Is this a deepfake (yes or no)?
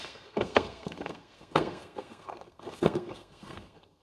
yes